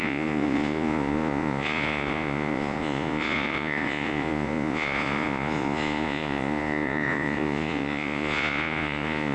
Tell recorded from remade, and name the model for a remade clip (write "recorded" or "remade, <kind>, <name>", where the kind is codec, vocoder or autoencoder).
remade, vocoder, Vocos